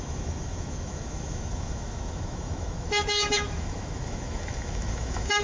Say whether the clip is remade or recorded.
remade